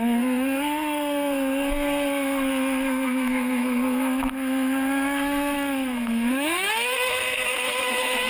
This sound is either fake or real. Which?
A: fake